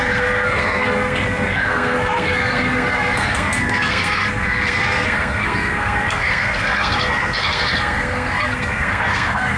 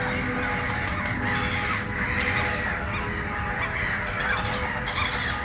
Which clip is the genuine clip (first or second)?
second